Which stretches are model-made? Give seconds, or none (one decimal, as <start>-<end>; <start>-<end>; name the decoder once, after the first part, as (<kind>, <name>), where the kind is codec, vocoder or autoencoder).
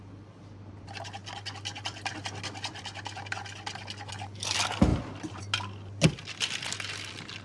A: none